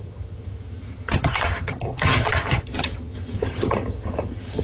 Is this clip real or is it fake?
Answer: fake